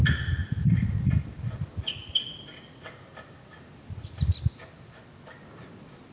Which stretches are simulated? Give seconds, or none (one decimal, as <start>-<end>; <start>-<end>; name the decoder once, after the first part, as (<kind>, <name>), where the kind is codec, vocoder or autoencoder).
none